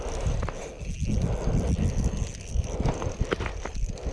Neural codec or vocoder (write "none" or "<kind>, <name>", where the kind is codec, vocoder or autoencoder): none